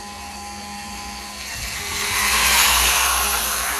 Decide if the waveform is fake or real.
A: fake